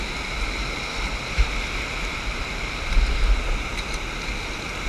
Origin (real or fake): real